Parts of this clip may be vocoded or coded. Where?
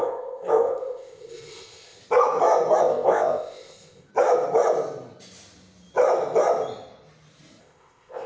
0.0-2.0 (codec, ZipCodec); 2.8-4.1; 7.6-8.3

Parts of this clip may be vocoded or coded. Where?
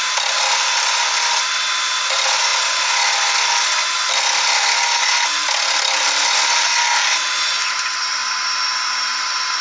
none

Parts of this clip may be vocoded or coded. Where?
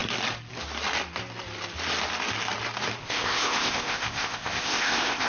3.0-5.3 (codec, ZipCodec)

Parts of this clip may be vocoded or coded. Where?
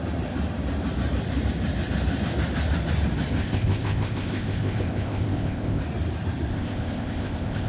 3.4-5.8 (codec, ZipCodec); 6.5-7.7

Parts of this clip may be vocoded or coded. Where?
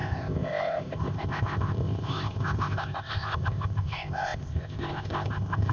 0.0-5.7 (codec, ZipCodec)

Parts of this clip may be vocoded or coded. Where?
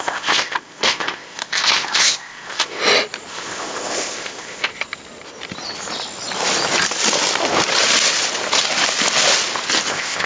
0.0-2.8 (codec, ZipCodec); 3.3-4.7; 9.9-10.3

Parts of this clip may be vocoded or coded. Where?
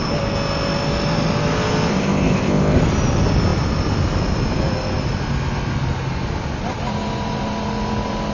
1.9-2.8 (codec, ZipCodec)